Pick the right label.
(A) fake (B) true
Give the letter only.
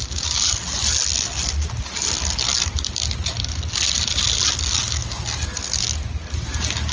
B